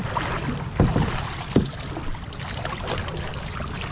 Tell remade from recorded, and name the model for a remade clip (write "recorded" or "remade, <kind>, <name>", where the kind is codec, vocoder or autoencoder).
recorded